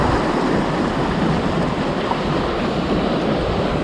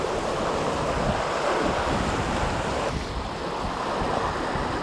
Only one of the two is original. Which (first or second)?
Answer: second